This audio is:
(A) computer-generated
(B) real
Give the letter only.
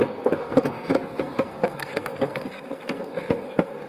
A